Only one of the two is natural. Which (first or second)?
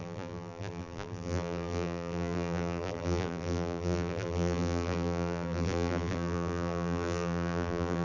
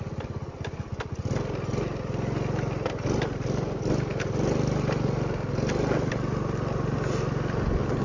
second